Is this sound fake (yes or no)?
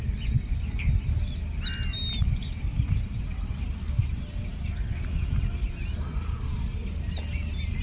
no